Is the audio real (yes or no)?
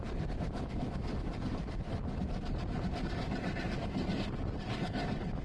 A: yes